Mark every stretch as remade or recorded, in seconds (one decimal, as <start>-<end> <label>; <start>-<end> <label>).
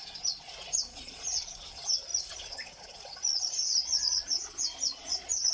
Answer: 0.0-5.5 remade